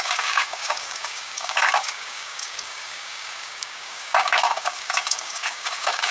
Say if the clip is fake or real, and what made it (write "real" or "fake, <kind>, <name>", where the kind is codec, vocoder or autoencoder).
fake, codec, DAC